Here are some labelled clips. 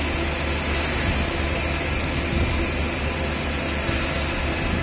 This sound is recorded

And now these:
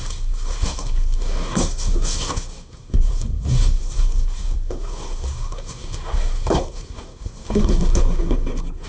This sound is remade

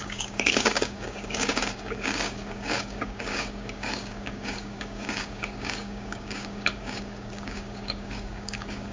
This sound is remade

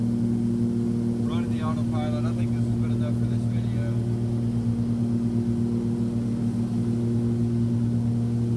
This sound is recorded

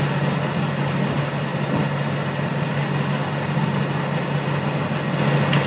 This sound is recorded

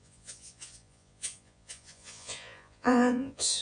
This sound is remade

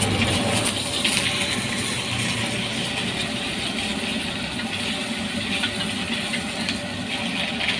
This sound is recorded